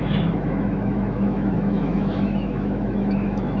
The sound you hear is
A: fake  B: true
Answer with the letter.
A